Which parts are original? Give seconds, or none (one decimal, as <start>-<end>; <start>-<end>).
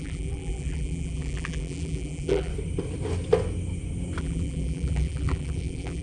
2.5-4.2